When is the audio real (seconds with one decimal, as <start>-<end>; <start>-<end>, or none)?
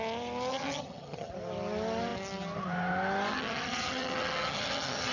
0.0-0.5; 1.3-3.3